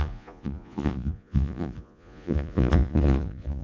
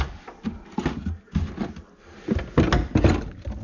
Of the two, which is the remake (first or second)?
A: first